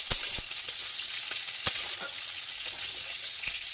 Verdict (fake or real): fake